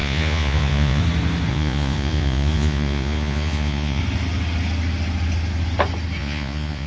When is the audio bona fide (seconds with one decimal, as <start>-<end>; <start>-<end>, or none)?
1.0-1.5; 4.0-6.2